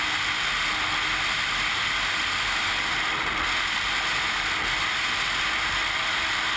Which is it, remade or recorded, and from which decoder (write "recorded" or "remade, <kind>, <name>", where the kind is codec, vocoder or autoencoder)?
recorded